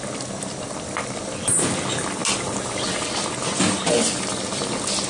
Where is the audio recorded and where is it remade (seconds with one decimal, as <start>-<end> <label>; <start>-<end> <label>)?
0.0-5.1 recorded